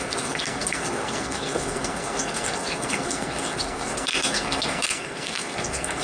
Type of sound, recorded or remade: remade